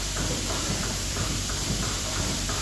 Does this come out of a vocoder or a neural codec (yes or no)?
yes